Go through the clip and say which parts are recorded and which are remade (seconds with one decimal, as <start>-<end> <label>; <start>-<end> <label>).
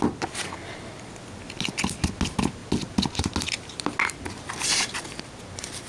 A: 0.0-5.9 recorded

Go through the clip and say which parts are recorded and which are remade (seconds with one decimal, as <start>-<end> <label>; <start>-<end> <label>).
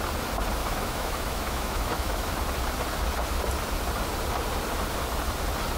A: 0.0-0.6 recorded; 0.6-2.3 remade; 2.3-5.8 recorded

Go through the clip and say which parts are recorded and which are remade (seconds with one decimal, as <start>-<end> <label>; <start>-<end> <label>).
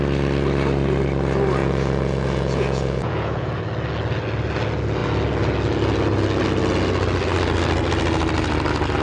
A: 0.0-1.6 recorded; 1.6-3.6 remade; 3.6-9.0 recorded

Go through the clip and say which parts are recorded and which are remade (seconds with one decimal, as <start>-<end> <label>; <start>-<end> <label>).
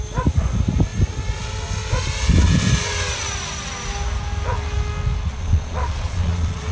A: 0.0-5.3 recorded; 5.3-6.7 remade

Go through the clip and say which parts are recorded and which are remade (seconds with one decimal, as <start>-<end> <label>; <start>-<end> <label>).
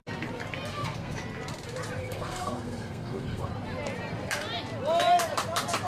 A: 0.0-0.7 recorded; 0.7-1.2 remade; 1.2-2.0 recorded; 2.0-3.5 remade; 3.5-5.9 recorded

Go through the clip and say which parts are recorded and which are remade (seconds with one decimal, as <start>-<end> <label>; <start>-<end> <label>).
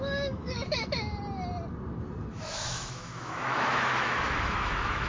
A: 0.0-1.1 remade; 1.1-2.3 recorded; 2.3-5.1 remade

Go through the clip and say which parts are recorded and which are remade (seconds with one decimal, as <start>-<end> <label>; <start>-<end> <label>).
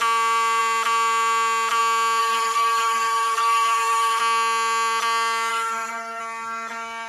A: 0.0-2.2 recorded; 2.2-4.2 remade; 4.2-5.5 recorded; 5.5-6.2 remade; 6.2-7.1 recorded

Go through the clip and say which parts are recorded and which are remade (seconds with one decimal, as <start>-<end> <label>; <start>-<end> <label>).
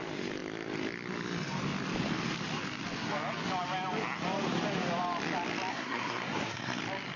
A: 0.0-5.7 recorded; 5.7-6.8 remade; 6.8-7.2 recorded